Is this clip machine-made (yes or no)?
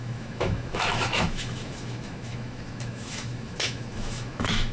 yes